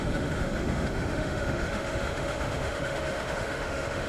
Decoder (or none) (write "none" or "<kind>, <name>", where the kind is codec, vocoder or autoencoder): autoencoder, DAC-VAE